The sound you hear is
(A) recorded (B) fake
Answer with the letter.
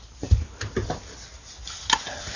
A